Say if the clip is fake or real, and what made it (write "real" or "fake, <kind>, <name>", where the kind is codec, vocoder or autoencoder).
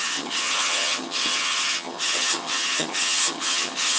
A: fake, vocoder, HiFi-GAN